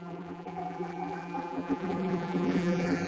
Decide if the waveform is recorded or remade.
remade